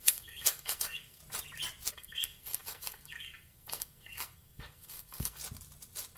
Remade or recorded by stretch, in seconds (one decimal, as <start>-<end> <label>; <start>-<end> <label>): 0.0-1.2 remade; 1.2-1.9 recorded; 1.9-5.4 remade; 5.4-6.2 recorded